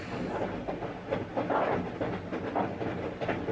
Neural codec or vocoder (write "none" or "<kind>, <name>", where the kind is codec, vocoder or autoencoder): none